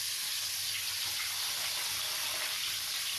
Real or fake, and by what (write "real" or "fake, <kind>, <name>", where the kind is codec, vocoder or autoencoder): real